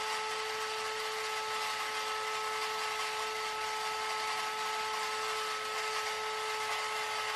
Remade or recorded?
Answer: recorded